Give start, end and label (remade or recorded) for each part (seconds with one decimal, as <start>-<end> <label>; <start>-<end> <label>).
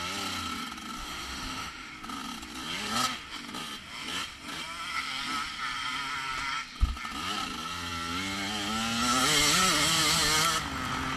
0.0-1.0 recorded; 1.0-1.9 remade; 1.9-11.2 recorded